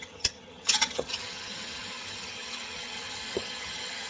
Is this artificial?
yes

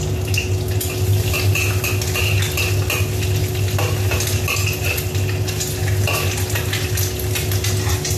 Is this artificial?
no